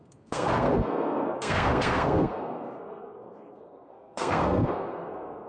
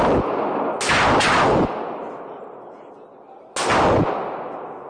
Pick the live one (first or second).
second